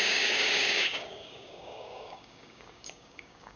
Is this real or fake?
fake